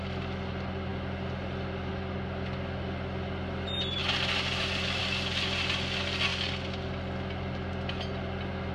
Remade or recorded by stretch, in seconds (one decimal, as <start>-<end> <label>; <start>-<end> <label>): 0.0-4.0 recorded; 4.0-5.0 remade; 5.0-8.7 recorded